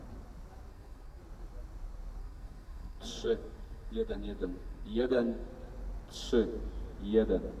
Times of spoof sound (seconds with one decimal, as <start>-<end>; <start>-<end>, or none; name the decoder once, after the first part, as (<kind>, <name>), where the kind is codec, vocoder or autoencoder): 0.7-1.2 (codec, SNAC); 2.2-5.5